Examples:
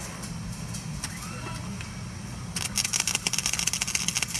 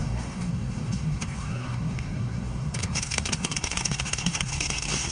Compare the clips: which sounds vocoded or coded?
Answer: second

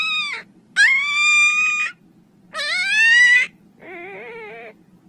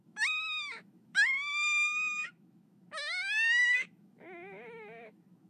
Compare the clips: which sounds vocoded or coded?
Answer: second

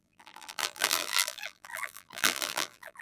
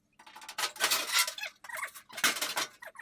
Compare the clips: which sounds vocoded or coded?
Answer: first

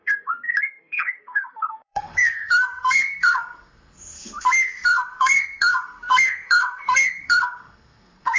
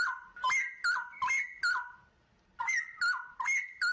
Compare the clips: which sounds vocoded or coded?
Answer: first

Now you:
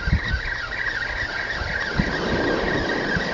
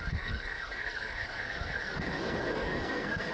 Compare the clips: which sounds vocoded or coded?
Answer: second